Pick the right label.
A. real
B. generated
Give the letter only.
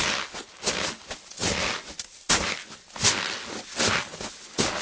A